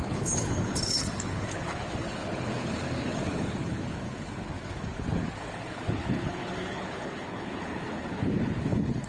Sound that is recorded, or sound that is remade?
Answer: remade